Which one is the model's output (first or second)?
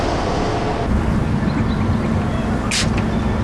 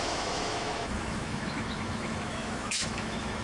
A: second